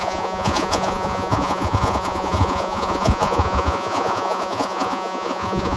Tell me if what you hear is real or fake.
fake